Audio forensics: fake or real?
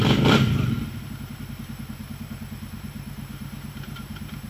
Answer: fake